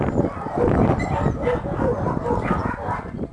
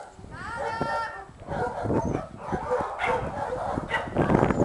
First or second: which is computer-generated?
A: first